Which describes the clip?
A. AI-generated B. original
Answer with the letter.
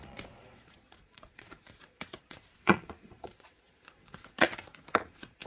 A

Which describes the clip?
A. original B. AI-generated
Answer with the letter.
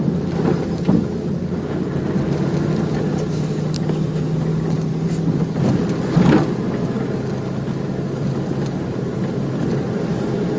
A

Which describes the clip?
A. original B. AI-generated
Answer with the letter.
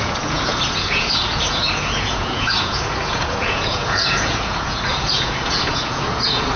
B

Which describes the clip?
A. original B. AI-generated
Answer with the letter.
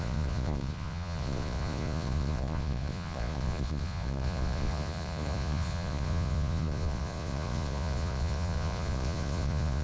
B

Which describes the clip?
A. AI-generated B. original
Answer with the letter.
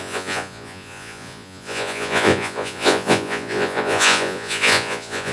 A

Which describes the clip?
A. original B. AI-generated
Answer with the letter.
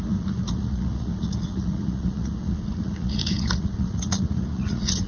B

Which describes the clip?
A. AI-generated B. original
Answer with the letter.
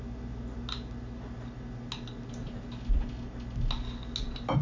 B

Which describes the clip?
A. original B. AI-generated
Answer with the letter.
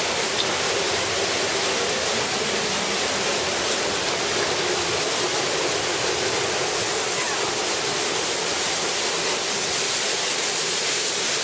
A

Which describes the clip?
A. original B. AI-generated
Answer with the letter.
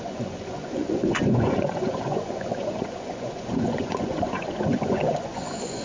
B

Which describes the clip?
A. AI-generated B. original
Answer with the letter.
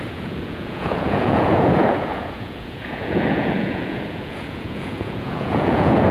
A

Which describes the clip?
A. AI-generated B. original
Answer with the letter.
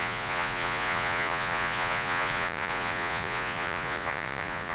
A